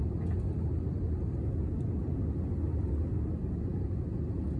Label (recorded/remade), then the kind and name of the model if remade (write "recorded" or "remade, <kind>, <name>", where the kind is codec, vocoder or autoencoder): recorded